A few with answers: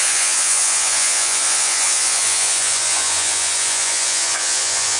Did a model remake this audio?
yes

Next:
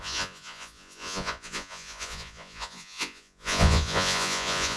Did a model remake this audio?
yes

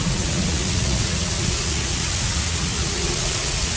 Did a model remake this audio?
yes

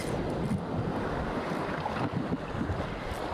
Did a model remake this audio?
no